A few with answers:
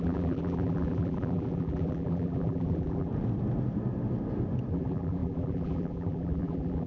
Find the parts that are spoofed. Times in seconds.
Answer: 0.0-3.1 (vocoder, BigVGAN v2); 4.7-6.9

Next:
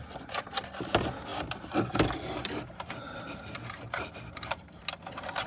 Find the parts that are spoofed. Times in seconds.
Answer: 2.4-4.8 (vocoder, BigVGAN v2)